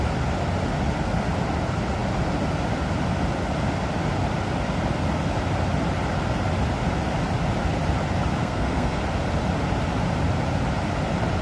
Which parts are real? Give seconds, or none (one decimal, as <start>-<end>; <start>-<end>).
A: 0.0-8.4; 9.0-11.4